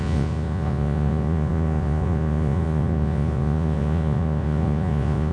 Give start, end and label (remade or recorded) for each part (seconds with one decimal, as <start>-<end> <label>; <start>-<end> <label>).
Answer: 0.0-5.3 remade

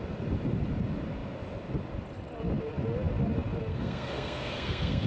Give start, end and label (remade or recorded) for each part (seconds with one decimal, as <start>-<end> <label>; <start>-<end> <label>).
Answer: 0.0-3.7 recorded; 3.7-5.1 remade

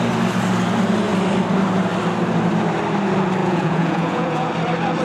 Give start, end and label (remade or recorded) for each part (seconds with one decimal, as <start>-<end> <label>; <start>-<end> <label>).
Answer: 0.0-3.4 recorded; 3.4-4.5 remade; 4.5-5.0 recorded

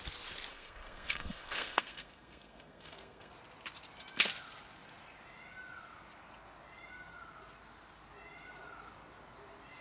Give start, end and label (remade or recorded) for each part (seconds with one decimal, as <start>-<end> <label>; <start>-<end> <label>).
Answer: 0.0-0.5 recorded; 0.5-3.3 remade; 3.3-9.8 recorded

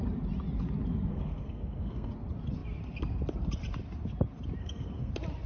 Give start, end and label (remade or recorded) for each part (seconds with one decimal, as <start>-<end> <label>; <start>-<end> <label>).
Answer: 0.0-1.1 recorded; 1.1-2.1 remade; 2.1-4.6 recorded; 4.6-5.1 remade; 5.1-5.5 recorded

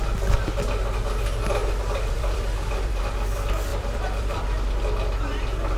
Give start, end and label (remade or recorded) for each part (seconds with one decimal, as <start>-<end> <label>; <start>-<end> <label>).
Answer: 0.0-1.6 recorded; 1.6-3.0 remade; 3.0-3.7 recorded; 3.7-4.5 remade; 4.5-5.8 recorded

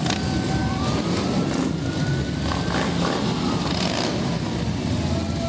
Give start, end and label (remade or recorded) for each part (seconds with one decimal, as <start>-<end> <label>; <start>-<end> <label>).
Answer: 0.0-5.5 recorded

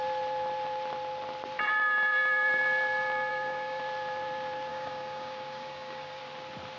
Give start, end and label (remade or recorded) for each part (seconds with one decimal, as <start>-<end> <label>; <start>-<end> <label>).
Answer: 0.0-3.3 recorded; 3.3-3.8 remade; 3.8-4.7 recorded; 4.7-6.2 remade; 6.2-6.8 recorded